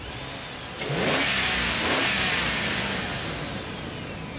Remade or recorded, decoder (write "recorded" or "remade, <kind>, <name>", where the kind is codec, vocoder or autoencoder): recorded